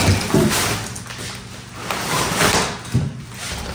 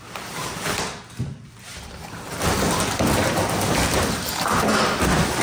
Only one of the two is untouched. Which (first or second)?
first